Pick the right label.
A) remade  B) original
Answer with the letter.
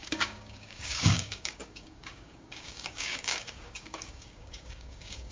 A